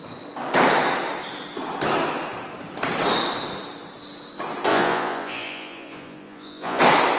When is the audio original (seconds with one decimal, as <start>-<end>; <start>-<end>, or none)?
0.0-4.7; 6.8-7.2